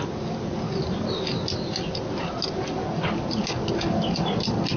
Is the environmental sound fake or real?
real